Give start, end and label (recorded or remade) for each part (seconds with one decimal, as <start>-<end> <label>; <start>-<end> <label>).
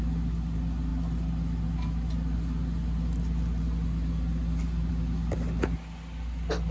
0.0-6.7 recorded